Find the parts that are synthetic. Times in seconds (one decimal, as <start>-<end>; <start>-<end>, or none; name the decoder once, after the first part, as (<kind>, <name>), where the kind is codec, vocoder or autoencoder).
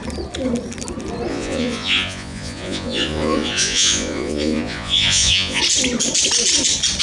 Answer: 1.3-5.6 (vocoder, Vocos)